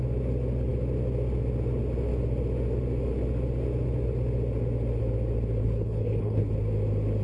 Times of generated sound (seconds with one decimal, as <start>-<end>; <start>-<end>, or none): 5.6-6.5